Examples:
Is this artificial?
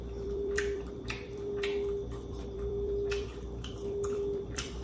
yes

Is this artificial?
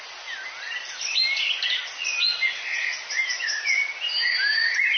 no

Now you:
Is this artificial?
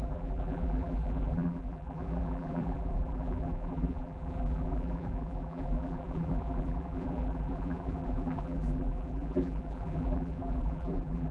yes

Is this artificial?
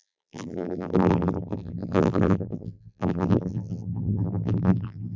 yes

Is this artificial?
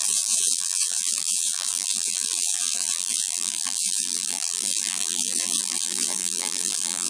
yes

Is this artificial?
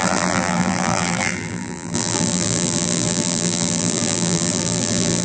yes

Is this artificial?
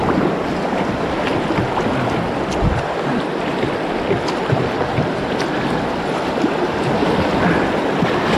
no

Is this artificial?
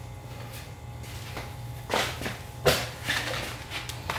no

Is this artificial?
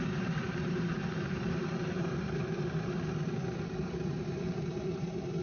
yes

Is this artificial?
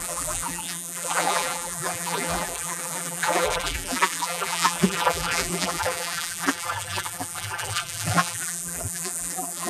yes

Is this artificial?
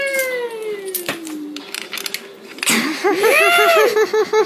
no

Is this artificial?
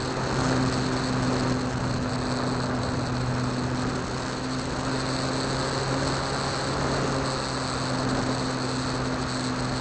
no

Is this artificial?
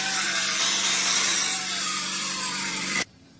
yes